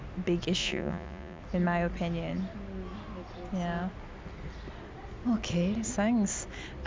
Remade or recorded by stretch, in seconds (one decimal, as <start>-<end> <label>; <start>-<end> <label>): 0.0-0.6 recorded; 0.6-1.4 remade; 1.4-6.9 recorded